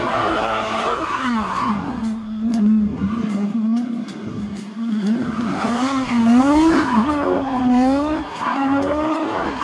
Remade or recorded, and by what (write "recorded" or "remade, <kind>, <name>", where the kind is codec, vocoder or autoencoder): remade, codec, SNAC